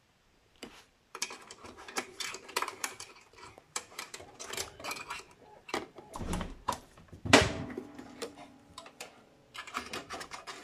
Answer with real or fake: fake